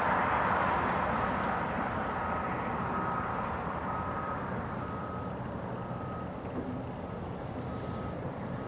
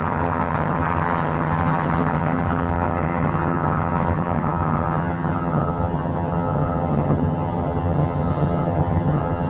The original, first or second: first